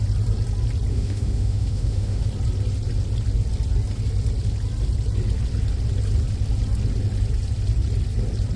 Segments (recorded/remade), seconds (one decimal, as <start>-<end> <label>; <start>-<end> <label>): 0.0-0.9 recorded; 0.9-2.2 remade; 2.2-8.6 recorded

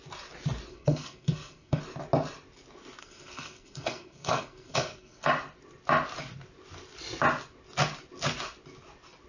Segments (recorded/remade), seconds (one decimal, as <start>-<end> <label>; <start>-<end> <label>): 0.0-0.7 recorded; 0.7-1.8 remade; 1.8-3.0 recorded; 3.0-5.3 remade; 5.3-9.3 recorded

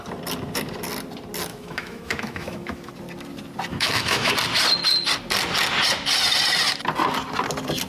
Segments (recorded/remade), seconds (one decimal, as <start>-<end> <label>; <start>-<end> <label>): 0.0-1.5 recorded; 1.5-2.9 remade; 2.9-3.7 recorded; 3.7-4.3 remade; 4.3-7.9 recorded

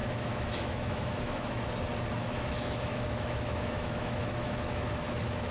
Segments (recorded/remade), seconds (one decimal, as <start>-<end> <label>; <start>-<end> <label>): 0.0-1.7 remade; 1.7-2.2 recorded; 2.2-5.5 remade

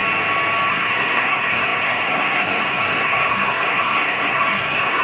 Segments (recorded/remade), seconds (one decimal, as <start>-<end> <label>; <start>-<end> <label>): 0.0-0.7 recorded; 0.7-5.0 remade

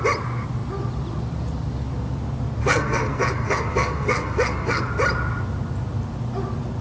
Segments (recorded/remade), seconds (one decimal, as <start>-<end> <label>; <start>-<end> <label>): 0.0-2.6 recorded; 2.6-4.9 remade; 4.9-6.8 recorded

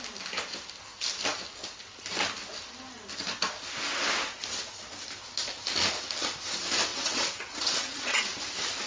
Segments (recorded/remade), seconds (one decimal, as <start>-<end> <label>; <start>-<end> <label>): 0.0-6.9 recorded; 6.9-8.2 remade; 8.2-8.9 recorded

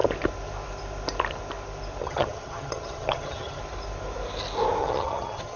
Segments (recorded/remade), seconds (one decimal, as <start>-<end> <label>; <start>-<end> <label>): 0.0-2.0 recorded; 2.0-3.6 remade; 3.6-4.8 recorded; 4.8-5.6 remade